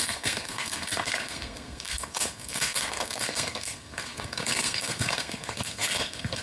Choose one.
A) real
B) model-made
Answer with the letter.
B